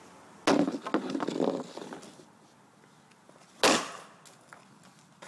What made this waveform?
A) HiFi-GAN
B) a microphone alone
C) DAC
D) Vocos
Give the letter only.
B